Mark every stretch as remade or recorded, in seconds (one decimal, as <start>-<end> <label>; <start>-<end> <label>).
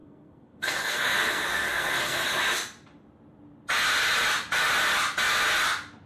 0.0-2.3 remade; 2.3-6.1 recorded